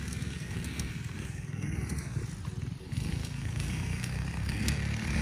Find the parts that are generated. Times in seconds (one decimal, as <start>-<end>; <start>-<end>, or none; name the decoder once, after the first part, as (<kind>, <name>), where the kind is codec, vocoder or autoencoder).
0.0-2.2 (codec, SNAC); 2.8-5.2